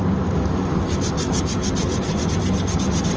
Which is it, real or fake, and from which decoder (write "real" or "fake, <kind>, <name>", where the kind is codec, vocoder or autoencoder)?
real